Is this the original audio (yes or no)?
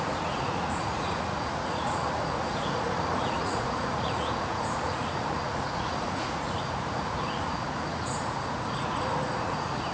no